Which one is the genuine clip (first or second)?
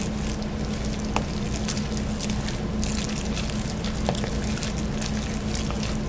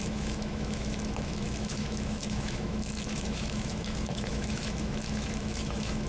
first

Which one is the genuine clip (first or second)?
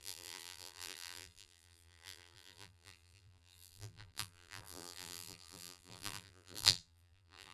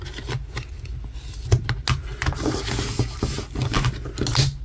second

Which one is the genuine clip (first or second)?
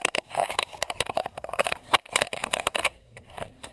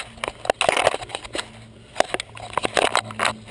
second